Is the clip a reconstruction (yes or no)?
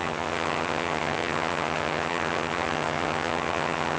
yes